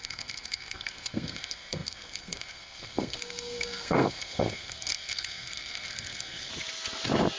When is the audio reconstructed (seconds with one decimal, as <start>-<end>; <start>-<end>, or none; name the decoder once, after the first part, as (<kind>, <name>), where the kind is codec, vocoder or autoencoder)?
0.0-6.5 (codec, SNAC)